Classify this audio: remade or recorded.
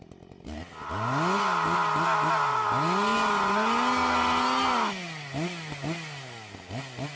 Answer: recorded